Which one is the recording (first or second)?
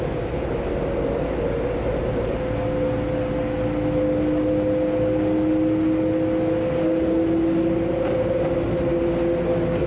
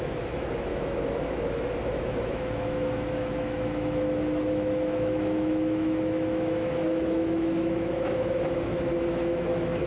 first